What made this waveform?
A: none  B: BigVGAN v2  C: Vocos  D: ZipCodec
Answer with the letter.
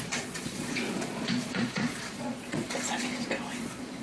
C